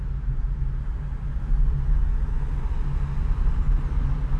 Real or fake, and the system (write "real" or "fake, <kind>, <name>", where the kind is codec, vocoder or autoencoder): real